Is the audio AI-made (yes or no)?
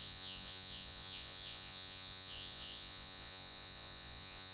yes